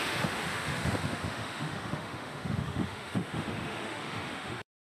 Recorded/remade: remade